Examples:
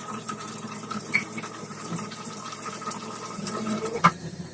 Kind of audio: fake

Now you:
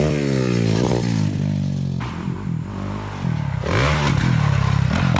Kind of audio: real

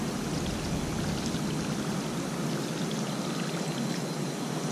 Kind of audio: real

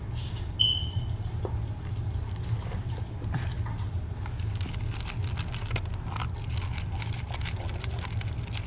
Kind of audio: real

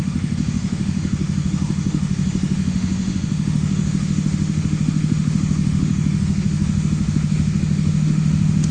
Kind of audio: fake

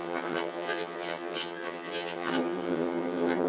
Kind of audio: fake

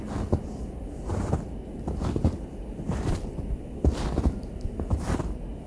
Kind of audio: real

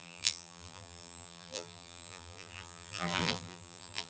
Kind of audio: fake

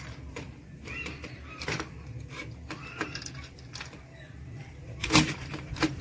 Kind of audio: fake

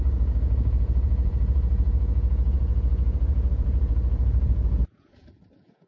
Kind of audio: fake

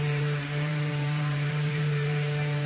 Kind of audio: fake